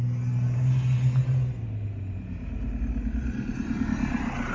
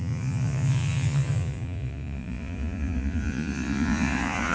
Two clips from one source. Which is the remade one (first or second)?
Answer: second